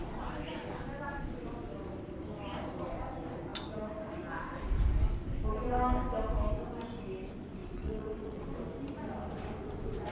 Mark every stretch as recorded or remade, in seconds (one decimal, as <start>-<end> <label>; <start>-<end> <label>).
0.0-7.6 recorded; 7.6-8.4 remade; 8.4-10.1 recorded